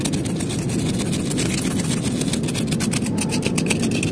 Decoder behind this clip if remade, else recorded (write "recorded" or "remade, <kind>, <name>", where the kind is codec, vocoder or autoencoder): recorded